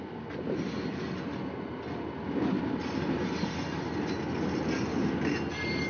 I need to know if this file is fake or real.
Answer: real